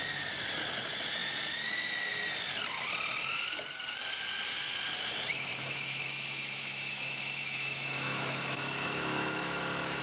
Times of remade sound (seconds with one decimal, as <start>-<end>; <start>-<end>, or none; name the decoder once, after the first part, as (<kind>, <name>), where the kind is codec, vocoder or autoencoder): 5.3-10.0 (autoencoder, DAC-VAE)